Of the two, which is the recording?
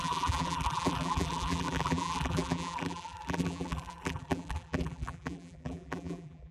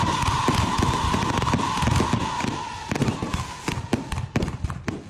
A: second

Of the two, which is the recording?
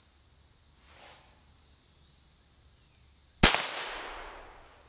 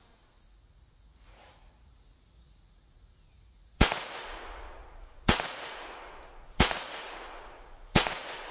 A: first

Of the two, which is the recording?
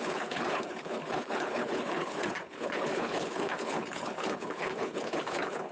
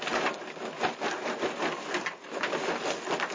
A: second